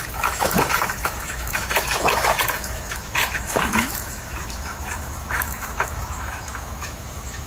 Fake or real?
fake